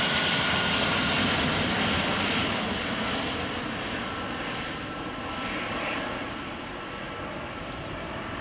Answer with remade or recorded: recorded